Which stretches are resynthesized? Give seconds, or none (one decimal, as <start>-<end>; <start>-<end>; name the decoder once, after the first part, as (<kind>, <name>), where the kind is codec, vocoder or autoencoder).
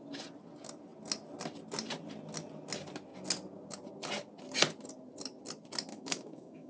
5.9-6.7 (autoencoder, DAC-VAE)